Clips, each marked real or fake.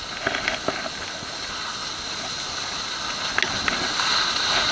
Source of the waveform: real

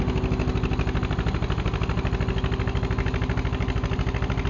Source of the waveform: real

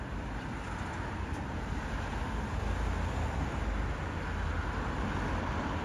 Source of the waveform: real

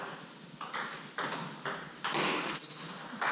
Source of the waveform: real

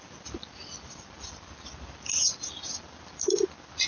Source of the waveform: real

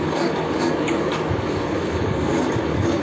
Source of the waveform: fake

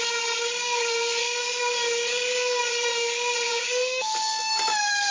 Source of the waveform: fake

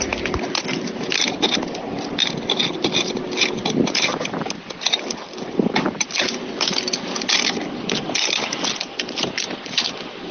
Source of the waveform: real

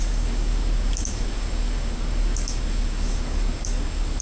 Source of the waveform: fake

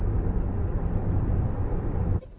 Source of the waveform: real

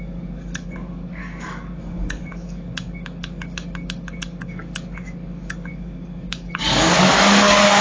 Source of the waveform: fake